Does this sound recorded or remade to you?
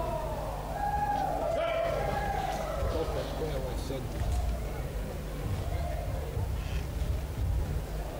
recorded